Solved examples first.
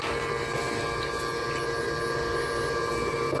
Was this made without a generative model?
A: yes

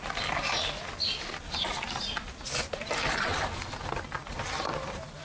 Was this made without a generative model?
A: yes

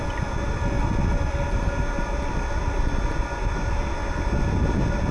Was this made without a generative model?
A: yes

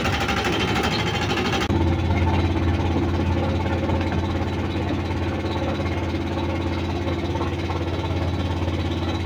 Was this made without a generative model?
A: yes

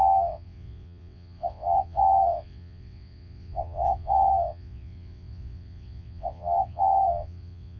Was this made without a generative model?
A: no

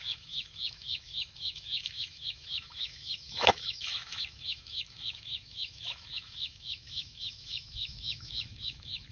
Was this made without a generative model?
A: no